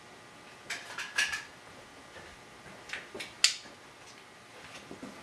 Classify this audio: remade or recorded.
recorded